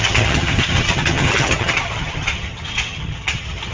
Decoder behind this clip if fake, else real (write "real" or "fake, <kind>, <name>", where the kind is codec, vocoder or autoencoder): fake, vocoder, HiFi-GAN